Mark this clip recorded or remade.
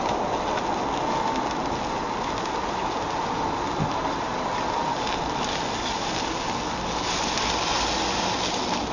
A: recorded